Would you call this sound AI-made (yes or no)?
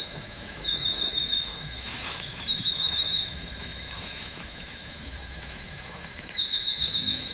yes